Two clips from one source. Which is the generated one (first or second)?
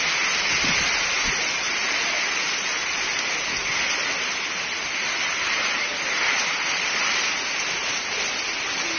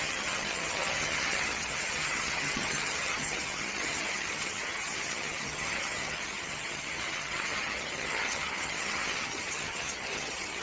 second